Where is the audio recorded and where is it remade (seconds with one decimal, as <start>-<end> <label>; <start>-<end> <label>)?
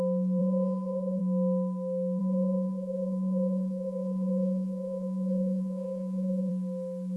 0.0-0.4 recorded; 0.4-1.2 remade; 1.2-2.2 recorded; 2.2-6.5 remade; 6.5-7.2 recorded